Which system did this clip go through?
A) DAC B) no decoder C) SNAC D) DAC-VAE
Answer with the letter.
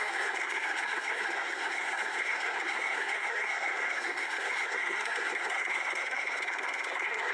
C